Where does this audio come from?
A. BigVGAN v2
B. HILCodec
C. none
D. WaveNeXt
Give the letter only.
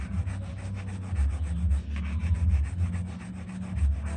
C